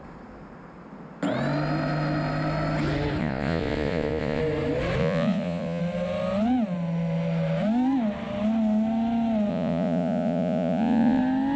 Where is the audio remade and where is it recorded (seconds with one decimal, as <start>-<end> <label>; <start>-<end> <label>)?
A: 0.0-3.2 recorded; 3.2-4.4 remade; 4.4-5.0 recorded; 5.0-5.8 remade; 5.8-9.5 recorded; 9.5-11.2 remade; 11.2-11.6 recorded